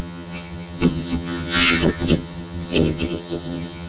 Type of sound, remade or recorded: remade